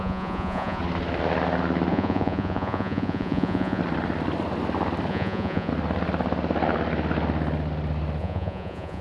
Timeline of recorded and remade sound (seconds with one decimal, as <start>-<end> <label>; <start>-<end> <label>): 0.0-0.8 remade; 0.8-1.9 recorded; 1.9-3.8 remade; 3.8-5.1 recorded; 5.1-5.7 remade; 5.7-8.2 recorded; 8.2-9.0 remade